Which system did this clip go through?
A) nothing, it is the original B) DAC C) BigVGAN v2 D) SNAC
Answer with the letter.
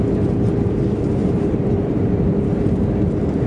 C